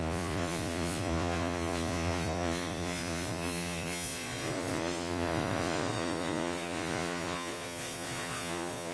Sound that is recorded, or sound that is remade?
remade